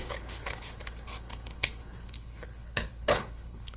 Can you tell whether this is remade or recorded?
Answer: remade